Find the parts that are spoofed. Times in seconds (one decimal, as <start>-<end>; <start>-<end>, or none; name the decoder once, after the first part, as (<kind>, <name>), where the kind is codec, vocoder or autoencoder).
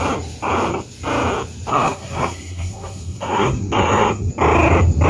1.7-4.3 (codec, SNAC)